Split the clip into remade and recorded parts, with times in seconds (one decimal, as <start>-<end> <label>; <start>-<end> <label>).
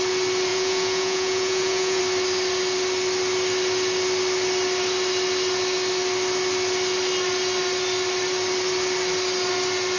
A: 0.0-0.5 recorded; 0.5-2.0 remade; 2.0-10.0 recorded